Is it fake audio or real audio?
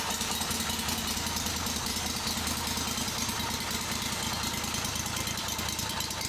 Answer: real